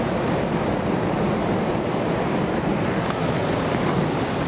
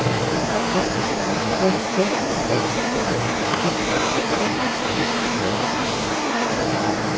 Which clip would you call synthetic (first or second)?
second